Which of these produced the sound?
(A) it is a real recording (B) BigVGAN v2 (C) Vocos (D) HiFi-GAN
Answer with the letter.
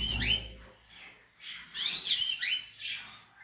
A